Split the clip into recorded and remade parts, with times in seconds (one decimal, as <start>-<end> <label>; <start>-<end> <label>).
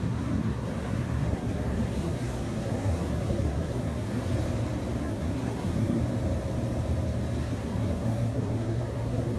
0.0-4.3 remade; 4.3-5.0 recorded; 5.0-6.0 remade; 6.0-7.4 recorded; 7.4-9.4 remade